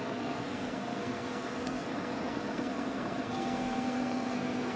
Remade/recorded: remade